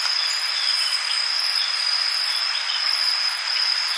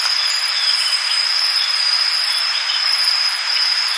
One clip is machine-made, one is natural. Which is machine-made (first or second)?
second